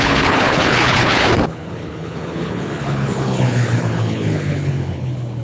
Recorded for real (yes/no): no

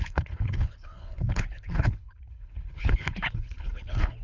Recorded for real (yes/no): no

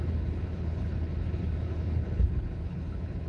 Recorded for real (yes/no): no